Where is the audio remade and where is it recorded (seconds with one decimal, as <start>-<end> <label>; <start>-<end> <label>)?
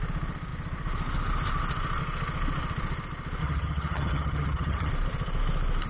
0.0-3.4 recorded; 3.4-4.9 remade; 4.9-5.9 recorded